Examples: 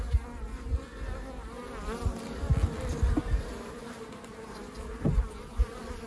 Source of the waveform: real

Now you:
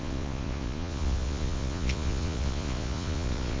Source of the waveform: fake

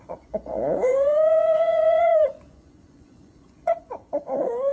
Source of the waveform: fake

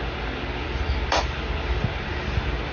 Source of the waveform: real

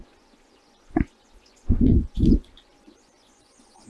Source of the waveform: fake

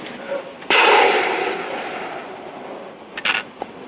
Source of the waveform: real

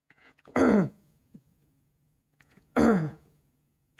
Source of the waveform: fake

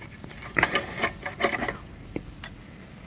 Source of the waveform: real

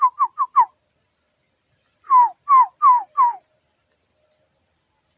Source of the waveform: real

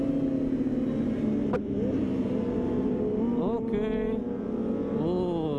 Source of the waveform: real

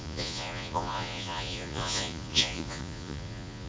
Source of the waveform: fake